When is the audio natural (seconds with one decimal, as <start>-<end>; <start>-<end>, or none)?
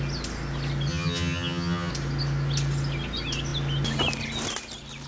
0.0-0.9; 1.9-5.1